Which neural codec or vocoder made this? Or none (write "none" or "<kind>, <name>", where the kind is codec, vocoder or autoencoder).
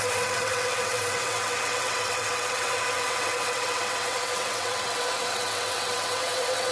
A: vocoder, WaveNeXt